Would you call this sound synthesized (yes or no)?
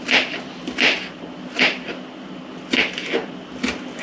no